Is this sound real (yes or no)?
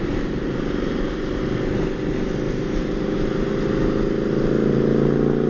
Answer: yes